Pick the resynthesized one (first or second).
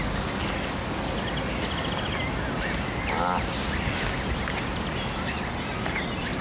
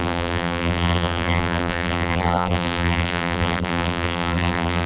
second